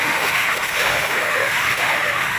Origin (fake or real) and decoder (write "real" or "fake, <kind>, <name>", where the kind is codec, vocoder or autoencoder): fake, autoencoder, DAC-VAE